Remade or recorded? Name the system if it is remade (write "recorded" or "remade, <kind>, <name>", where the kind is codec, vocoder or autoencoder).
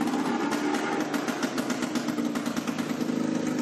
recorded